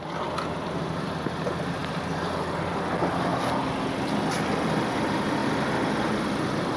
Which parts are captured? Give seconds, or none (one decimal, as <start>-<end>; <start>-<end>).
0.0-6.8